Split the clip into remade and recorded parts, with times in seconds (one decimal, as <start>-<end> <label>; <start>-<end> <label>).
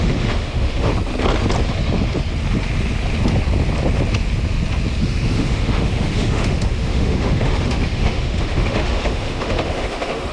0.0-0.9 remade; 0.9-5.0 recorded; 5.0-10.3 remade